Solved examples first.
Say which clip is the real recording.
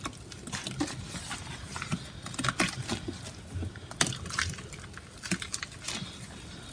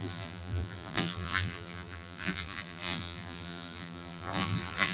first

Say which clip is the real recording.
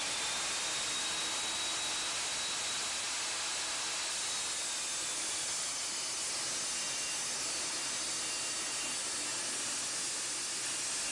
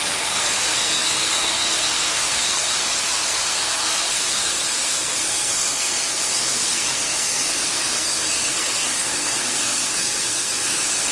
first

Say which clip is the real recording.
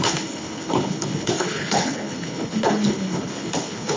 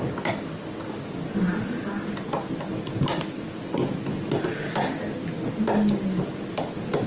second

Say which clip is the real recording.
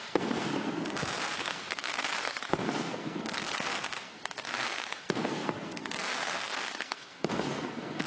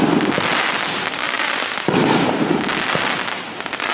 second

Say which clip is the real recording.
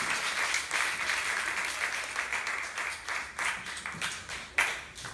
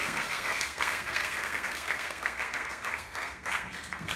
first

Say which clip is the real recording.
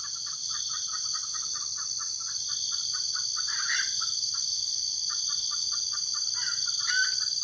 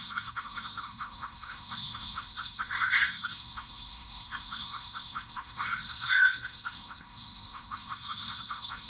first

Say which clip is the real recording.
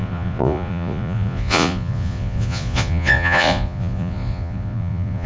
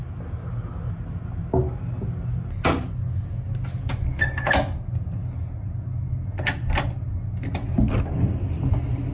second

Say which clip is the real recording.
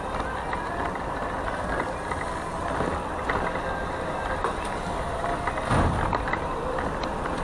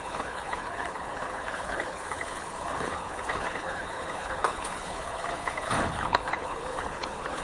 first